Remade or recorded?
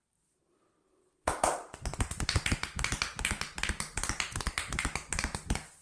recorded